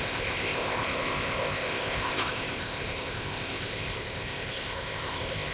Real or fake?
fake